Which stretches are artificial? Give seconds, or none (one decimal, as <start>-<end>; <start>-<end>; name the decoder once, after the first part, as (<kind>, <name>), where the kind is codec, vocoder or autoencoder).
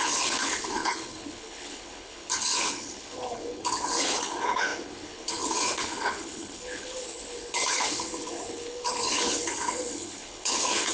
0.0-10.9 (codec, HILCodec)